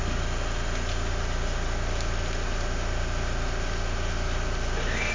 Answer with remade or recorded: recorded